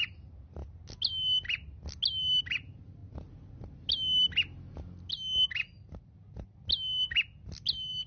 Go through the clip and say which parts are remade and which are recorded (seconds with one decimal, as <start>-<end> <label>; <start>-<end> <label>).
0.0-8.1 recorded